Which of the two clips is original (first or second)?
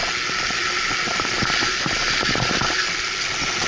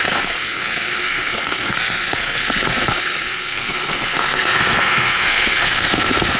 first